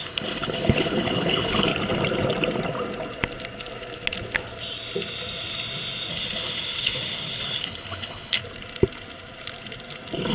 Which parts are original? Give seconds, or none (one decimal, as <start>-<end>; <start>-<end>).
1.7-6.1; 8.4-10.3